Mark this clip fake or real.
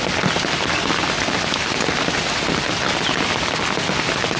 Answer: real